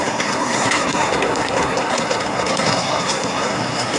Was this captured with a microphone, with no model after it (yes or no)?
no